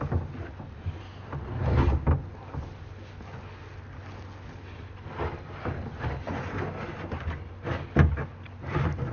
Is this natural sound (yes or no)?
yes